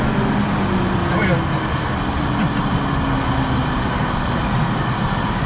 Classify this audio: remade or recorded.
recorded